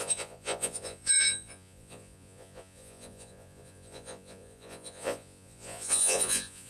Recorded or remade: remade